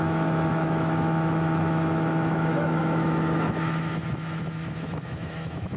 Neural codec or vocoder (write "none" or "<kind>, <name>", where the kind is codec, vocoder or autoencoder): autoencoder, DAC-VAE